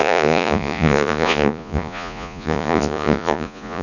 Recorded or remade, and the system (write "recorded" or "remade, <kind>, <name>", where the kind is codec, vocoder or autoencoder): remade, vocoder, Vocos